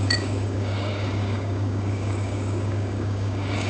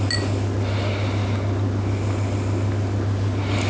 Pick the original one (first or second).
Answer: second